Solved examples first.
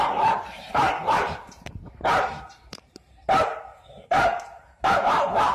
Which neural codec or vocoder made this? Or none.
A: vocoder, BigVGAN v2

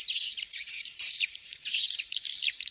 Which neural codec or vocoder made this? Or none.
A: vocoder, BigVGAN v2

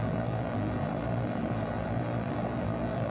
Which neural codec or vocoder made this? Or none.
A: vocoder, BigVGAN v2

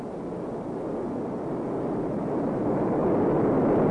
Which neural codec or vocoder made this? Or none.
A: none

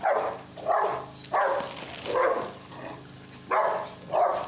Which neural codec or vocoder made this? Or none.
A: none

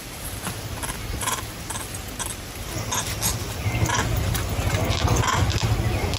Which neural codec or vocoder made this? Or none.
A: none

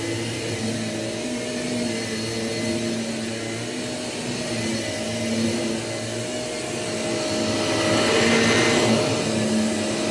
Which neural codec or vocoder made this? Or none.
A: none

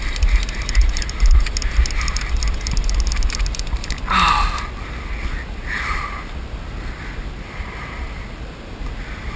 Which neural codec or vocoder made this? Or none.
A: none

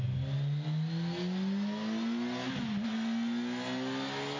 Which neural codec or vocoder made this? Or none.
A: none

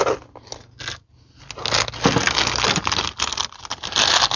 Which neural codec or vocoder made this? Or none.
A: none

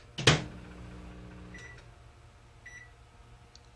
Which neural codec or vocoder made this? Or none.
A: none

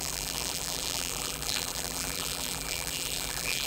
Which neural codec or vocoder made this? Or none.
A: vocoder, BigVGAN v2